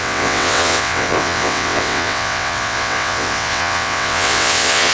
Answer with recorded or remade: remade